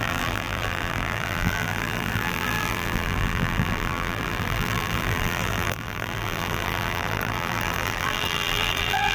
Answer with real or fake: fake